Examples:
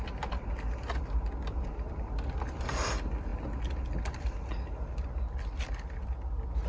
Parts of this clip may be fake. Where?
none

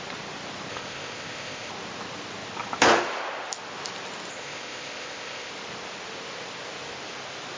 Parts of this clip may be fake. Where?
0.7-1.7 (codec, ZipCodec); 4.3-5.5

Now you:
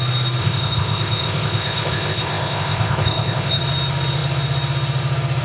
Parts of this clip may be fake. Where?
0.4-3.6 (codec, ZipCodec)

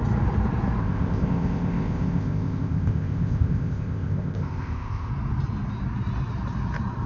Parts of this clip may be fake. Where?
0.8-5.1 (codec, ZipCodec)

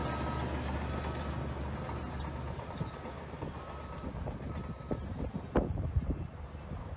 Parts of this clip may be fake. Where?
none

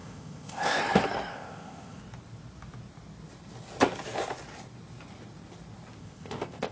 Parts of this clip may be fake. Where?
0.0-0.8 (codec, ZipCodec); 1.3-2.0; 6.0-6.7